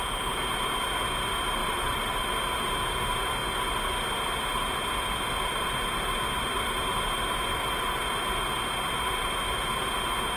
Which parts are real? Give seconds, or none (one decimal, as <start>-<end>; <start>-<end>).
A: 0.0-1.6; 2.2-7.5; 8.0-10.4